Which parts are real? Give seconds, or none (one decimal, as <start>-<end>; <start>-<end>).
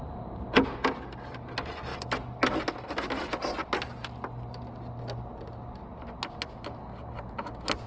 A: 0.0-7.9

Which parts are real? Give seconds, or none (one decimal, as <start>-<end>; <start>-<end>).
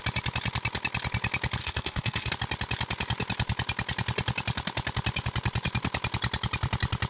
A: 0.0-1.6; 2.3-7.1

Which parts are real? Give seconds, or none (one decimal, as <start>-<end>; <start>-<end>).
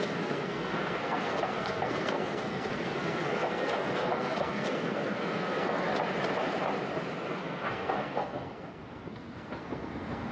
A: 5.9-7.3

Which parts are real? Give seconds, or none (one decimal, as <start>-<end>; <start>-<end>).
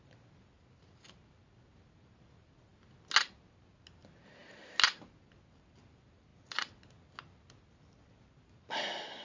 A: 0.0-9.2